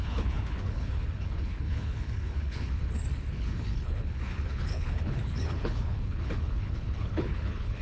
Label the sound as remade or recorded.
remade